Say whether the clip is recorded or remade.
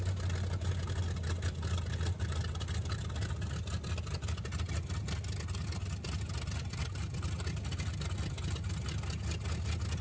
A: recorded